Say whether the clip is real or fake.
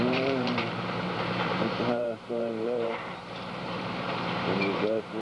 fake